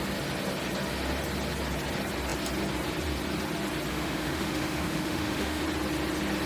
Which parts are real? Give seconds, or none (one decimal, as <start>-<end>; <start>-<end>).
0.0-3.9; 5.6-6.5